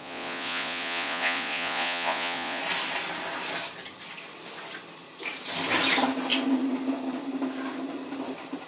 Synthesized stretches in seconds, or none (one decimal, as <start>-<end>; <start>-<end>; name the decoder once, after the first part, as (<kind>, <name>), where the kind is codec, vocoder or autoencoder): 0.0-2.6 (vocoder, Vocos)